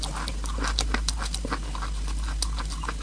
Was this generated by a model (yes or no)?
no